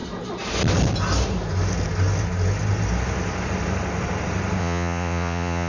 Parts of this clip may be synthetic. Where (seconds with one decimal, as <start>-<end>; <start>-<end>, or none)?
4.6-5.7